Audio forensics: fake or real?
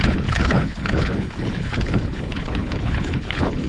fake